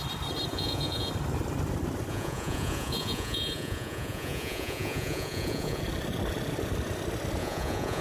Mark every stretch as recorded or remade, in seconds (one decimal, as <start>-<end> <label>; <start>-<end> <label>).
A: 0.0-0.5 recorded; 0.5-1.1 remade; 1.1-2.1 recorded; 2.1-5.8 remade; 5.8-7.4 recorded; 7.4-8.0 remade

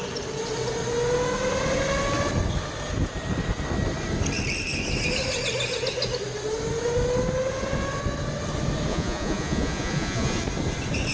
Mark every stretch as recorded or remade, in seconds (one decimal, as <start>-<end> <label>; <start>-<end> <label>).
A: 0.0-8.9 recorded; 8.9-10.4 remade; 10.4-11.1 recorded

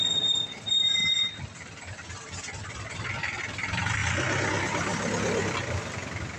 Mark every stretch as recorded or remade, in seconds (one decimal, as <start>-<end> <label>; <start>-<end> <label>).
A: 0.0-4.0 remade; 4.0-4.5 recorded; 4.5-4.9 remade; 4.9-5.4 recorded; 5.4-6.4 remade

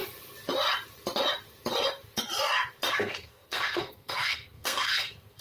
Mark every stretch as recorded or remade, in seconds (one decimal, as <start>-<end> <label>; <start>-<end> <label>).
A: 0.0-2.9 recorded; 2.9-5.4 remade

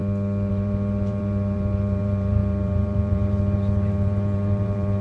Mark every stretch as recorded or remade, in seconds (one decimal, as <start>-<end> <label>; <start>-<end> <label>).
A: 0.0-0.5 recorded; 0.5-5.0 remade

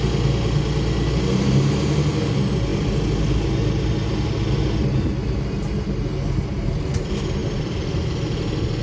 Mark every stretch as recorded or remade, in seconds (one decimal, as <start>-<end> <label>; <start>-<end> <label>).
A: 0.0-8.8 recorded

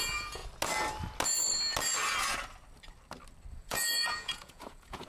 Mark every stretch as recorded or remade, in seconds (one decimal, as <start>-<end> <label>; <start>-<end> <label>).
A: 0.0-0.4 remade; 0.4-3.5 recorded; 3.5-5.1 remade